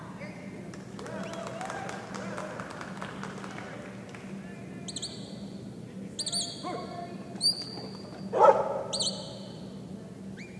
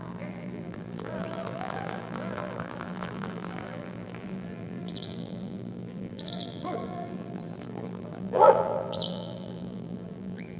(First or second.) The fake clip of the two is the second